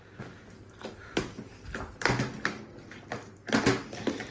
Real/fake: real